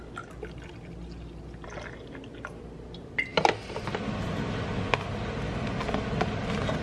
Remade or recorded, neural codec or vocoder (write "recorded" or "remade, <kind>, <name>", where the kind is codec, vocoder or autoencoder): recorded